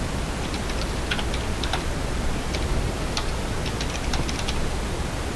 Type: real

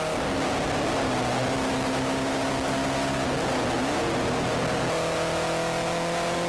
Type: real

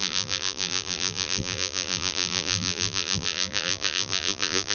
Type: fake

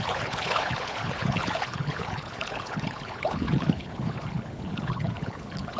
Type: fake